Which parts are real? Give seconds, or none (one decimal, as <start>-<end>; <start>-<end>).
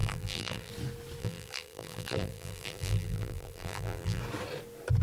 0.7-1.2; 4.2-5.0